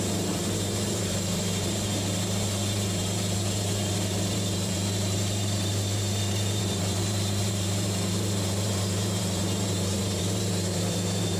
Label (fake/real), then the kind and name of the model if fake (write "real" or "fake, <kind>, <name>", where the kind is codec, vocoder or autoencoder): fake, vocoder, BigVGAN v2